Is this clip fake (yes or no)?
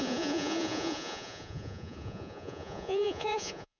yes